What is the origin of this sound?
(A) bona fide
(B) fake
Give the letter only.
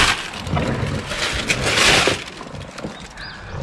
A